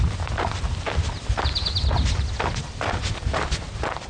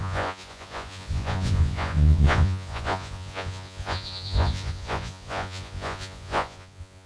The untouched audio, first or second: first